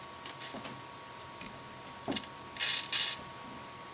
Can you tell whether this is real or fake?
real